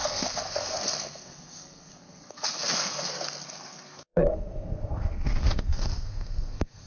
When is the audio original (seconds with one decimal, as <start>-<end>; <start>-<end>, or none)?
none